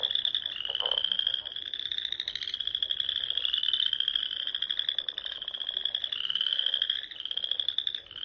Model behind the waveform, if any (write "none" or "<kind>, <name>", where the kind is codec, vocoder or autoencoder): none